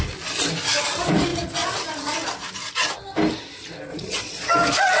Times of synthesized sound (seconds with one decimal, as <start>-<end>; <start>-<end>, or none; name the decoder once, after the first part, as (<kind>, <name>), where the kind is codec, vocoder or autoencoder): 3.9-4.5 (vocoder, Vocos)